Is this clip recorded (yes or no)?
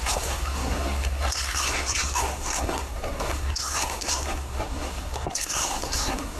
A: no